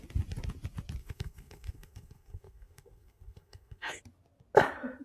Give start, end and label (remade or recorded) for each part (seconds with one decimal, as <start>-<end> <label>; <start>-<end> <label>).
0.0-1.0 recorded; 1.0-4.0 remade; 4.0-5.0 recorded